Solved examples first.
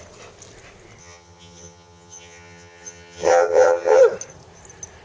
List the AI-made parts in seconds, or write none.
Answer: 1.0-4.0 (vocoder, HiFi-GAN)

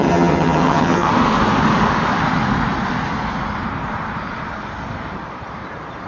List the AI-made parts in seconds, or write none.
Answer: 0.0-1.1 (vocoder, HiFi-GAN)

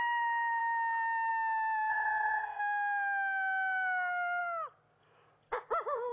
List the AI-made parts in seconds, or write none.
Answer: 1.9-2.6 (vocoder, HiFi-GAN)